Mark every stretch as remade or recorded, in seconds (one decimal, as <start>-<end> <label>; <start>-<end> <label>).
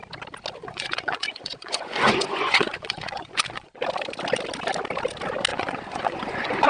0.0-0.6 recorded; 0.6-3.8 remade; 3.8-5.5 recorded; 5.5-6.7 remade